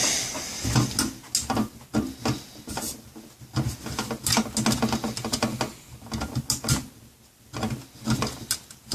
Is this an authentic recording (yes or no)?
yes